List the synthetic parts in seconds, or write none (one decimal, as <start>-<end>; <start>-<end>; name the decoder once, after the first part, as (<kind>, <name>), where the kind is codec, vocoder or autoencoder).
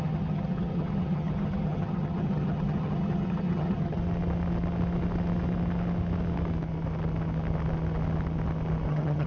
0.0-4.0 (vocoder, HiFi-GAN); 8.9-9.3